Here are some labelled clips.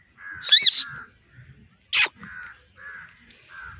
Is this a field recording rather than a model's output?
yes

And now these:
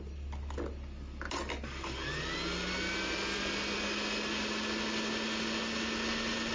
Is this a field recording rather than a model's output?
yes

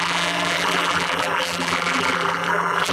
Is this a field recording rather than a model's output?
no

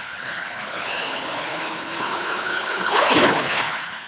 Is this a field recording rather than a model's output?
no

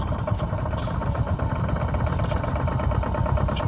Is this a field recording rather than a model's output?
no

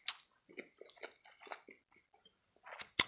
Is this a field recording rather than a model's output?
yes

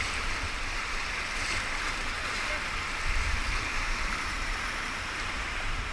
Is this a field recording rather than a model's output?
no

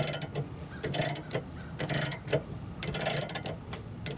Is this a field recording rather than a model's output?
yes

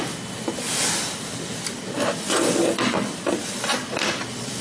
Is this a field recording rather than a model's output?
no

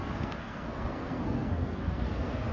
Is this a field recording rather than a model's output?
no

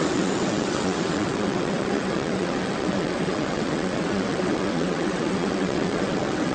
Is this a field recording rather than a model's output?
no